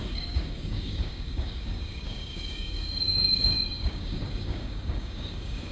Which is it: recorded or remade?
remade